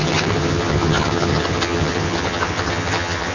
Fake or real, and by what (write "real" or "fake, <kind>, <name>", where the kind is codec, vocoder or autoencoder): fake, vocoder, HiFi-GAN